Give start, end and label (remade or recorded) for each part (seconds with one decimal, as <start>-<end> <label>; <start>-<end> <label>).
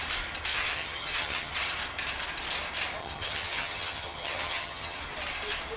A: 0.0-0.5 recorded; 0.5-1.5 remade; 1.5-3.0 recorded; 3.0-5.0 remade; 5.0-5.8 recorded